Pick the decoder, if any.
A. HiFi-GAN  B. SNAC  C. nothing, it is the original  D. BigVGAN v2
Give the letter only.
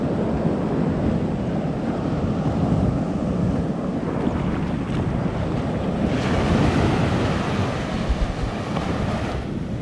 C